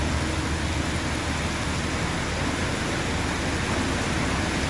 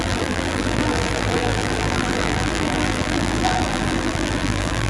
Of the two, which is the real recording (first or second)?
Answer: first